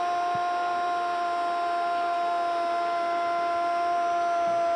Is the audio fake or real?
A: real